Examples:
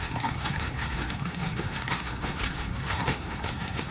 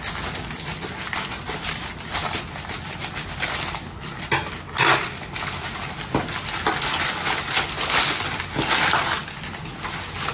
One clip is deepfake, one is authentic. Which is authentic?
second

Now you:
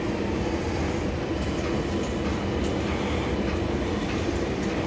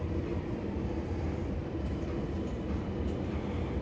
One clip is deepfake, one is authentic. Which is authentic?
first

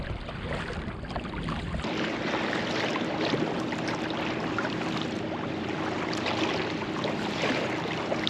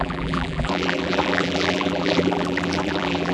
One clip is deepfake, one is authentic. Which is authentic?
first